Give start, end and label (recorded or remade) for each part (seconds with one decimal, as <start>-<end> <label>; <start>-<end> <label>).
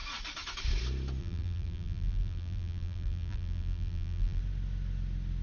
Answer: 0.0-1.2 recorded; 1.2-4.4 remade; 4.4-5.4 recorded